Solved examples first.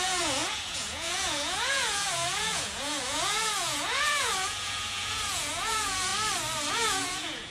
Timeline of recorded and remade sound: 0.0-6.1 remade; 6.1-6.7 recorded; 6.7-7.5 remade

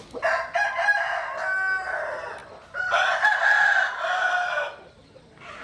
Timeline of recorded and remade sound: 0.0-5.6 recorded

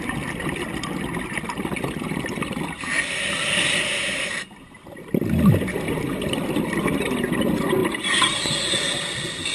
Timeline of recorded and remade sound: 0.0-7.8 recorded; 7.8-8.5 remade; 8.5-9.5 recorded

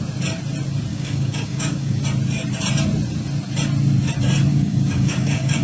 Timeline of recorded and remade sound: 0.0-0.9 recorded; 0.9-2.0 remade; 2.0-4.5 recorded; 4.5-5.6 remade

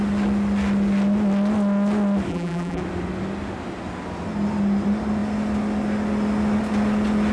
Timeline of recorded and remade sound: 0.0-2.3 recorded; 2.3-2.8 remade; 2.8-7.3 recorded